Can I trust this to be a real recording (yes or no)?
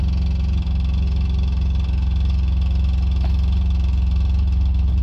yes